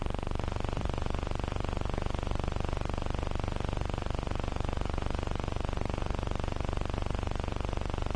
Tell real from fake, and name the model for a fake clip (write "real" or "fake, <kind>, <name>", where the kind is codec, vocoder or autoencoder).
real